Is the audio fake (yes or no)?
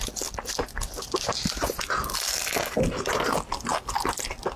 no